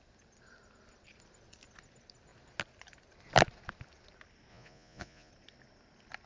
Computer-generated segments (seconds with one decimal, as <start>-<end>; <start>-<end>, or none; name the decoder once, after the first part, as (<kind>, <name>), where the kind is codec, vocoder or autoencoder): 4.5-5.3 (vocoder, Vocos)